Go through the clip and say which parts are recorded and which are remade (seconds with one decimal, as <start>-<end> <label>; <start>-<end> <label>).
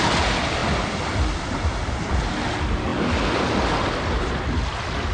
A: 0.0-5.1 recorded